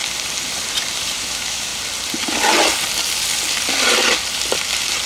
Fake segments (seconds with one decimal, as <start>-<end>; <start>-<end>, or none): 1.2-1.7